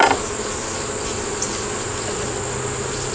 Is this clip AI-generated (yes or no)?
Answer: no